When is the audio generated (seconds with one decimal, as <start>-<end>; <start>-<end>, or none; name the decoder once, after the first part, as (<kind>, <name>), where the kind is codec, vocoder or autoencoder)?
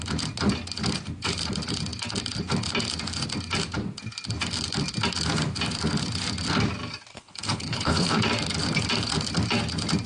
7.1-8.2 (codec, HILCodec)